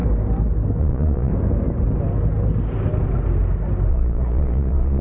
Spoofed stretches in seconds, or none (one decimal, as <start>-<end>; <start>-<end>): 0.8-1.3; 3.9-5.0